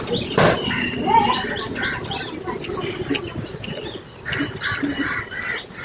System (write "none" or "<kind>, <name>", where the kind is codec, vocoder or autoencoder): none